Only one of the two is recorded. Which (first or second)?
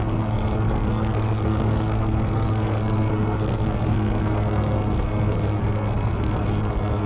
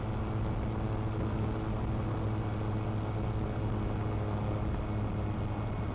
second